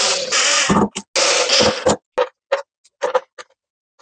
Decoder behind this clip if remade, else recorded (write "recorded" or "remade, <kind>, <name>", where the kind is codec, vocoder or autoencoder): recorded